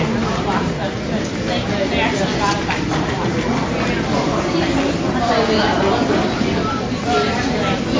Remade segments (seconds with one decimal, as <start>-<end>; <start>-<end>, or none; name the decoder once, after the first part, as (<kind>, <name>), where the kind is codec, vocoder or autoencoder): none